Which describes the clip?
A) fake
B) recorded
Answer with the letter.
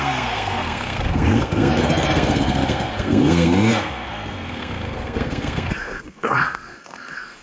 A